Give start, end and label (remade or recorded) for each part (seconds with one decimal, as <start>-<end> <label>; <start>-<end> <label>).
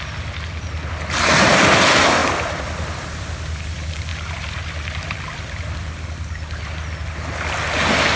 0.0-2.2 recorded; 2.2-3.2 remade; 3.2-4.1 recorded; 4.1-6.7 remade; 6.7-8.2 recorded